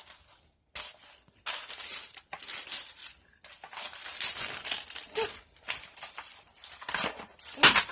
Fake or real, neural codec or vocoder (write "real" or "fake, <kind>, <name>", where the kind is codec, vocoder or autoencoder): real